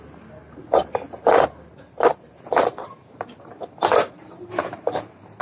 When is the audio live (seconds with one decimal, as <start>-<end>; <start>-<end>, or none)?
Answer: 0.0-2.1